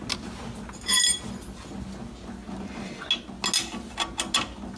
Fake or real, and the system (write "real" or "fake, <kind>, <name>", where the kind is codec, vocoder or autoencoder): real